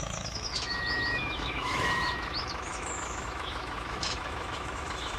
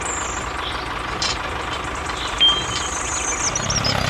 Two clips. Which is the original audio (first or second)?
second